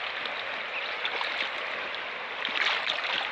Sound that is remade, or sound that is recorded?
recorded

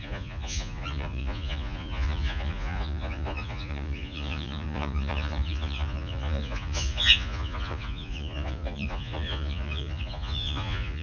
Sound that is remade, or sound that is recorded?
remade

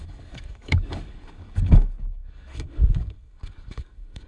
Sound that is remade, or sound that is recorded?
remade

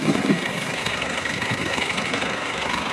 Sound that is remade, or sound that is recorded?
remade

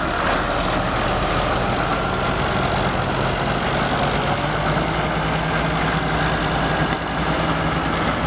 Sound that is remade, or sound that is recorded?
recorded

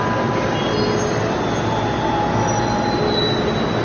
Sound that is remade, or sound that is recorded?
recorded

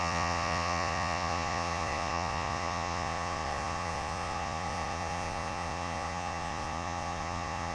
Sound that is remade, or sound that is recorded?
remade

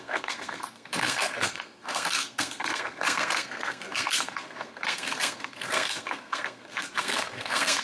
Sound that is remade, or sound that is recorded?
remade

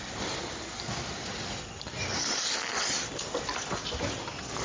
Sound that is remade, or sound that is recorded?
recorded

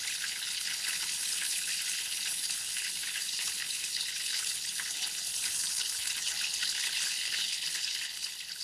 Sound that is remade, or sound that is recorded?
remade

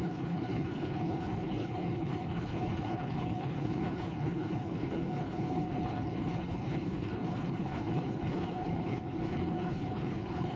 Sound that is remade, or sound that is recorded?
remade